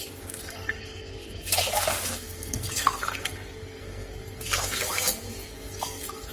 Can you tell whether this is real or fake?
fake